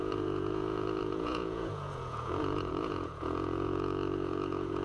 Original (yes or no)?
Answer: no